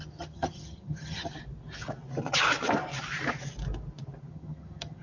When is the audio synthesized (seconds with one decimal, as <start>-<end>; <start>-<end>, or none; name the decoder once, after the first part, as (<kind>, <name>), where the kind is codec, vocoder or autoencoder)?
0.0-1.3 (vocoder, HiFi-GAN); 4.3-5.0